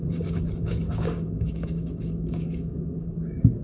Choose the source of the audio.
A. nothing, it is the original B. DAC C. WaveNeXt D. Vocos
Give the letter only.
B